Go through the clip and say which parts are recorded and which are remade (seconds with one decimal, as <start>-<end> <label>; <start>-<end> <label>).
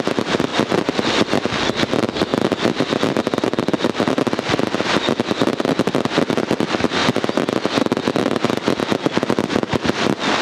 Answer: 0.0-2.3 remade; 2.3-2.8 recorded; 2.8-7.0 remade; 7.0-8.0 recorded; 8.0-8.8 remade; 8.8-9.5 recorded; 9.5-10.4 remade